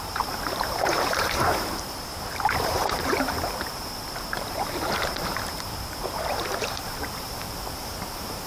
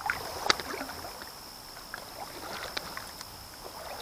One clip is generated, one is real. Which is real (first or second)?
second